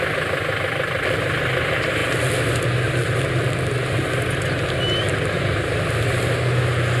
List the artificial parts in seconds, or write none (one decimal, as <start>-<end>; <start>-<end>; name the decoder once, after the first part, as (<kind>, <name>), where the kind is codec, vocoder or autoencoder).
none